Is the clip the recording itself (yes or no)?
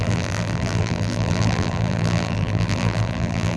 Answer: no